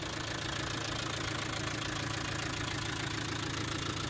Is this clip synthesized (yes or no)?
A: no